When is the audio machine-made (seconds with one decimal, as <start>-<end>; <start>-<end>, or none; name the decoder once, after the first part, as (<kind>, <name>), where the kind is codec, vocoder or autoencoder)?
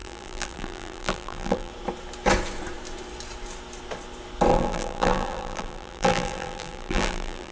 0.0-1.7 (vocoder, BigVGAN v2); 4.5-7.5